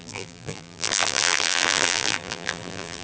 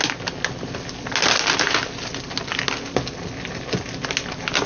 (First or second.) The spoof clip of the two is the first